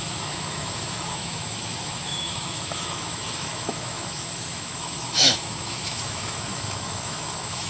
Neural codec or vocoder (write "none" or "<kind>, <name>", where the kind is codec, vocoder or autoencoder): autoencoder, DAC-VAE